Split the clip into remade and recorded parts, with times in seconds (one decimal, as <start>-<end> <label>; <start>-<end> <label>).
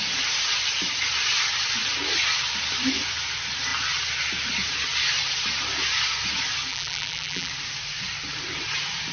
0.0-6.7 recorded; 6.7-7.5 remade; 7.5-9.1 recorded